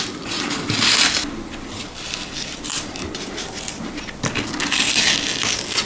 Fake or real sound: real